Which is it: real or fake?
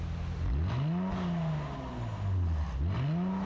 real